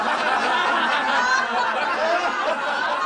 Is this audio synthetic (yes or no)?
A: no